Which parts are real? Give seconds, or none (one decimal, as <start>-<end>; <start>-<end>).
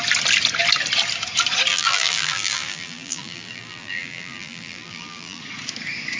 0.0-1.7; 5.4-6.2